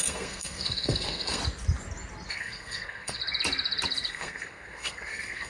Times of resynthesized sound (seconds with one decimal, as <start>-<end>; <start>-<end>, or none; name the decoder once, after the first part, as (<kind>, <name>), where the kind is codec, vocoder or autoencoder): 0.0-1.4 (codec, SNAC); 2.3-3.2; 4.1-5.5

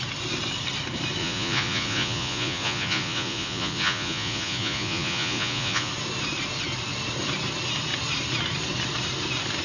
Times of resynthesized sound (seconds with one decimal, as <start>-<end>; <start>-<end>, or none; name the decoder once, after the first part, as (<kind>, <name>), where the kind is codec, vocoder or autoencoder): 1.2-5.9 (vocoder, Vocos)

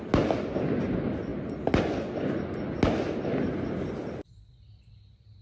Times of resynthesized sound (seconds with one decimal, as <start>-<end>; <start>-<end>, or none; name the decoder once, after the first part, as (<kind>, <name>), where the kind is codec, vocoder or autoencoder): none

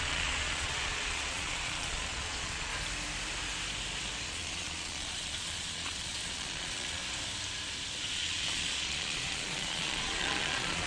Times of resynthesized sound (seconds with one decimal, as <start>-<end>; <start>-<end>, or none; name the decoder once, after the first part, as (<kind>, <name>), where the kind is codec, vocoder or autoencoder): 0.0-2.7 (vocoder, Vocos); 4.3-7.0; 8.1-10.9

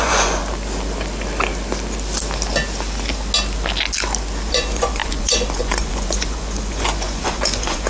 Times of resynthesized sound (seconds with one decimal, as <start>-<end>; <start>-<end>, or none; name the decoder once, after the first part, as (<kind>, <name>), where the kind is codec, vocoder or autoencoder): 0.0-0.4 (vocoder, Vocos); 4.5-7.9